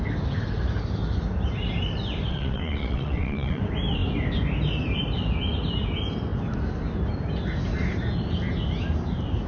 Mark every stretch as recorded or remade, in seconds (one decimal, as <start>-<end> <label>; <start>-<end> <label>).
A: 0.0-2.3 recorded; 2.3-3.6 remade; 3.6-9.5 recorded